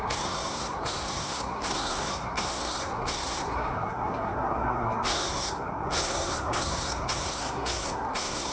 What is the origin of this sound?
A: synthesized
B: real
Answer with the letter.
A